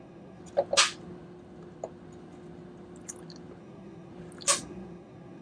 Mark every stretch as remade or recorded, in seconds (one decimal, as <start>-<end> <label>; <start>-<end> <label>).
0.0-0.4 remade; 0.4-3.6 recorded; 3.6-4.1 remade; 4.1-4.6 recorded; 4.6-5.4 remade